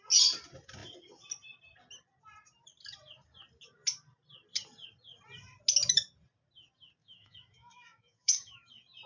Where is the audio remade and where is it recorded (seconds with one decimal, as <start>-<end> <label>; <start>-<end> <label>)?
0.0-7.0 recorded; 7.0-8.7 remade; 8.7-9.1 recorded